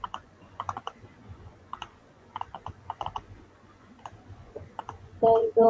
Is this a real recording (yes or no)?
no